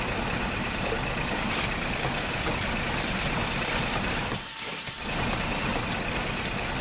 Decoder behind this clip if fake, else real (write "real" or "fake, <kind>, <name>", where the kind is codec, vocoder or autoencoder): fake, vocoder, BigVGAN v2